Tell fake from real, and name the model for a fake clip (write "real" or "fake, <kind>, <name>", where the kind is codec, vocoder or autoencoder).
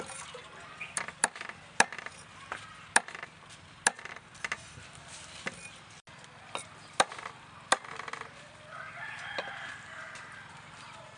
real